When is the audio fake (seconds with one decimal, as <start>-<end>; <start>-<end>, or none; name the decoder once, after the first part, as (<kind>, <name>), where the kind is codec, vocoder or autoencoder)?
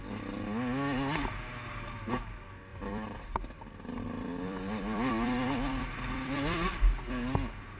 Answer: 2.7-6.8 (vocoder, BigVGAN v2)